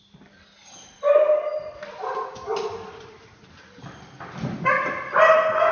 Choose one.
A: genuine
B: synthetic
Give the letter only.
A